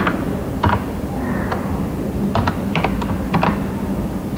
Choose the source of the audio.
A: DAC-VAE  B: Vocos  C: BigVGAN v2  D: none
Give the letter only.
D